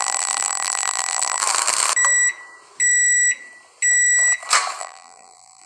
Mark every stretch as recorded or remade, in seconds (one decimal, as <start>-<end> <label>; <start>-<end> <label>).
0.0-1.4 remade; 1.4-4.8 recorded; 4.8-5.7 remade